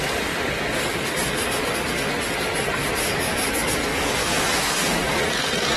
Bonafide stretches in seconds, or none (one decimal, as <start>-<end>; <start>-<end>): 0.0-0.9; 2.1-2.8